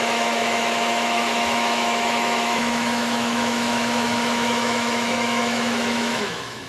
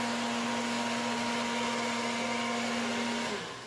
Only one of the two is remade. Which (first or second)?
first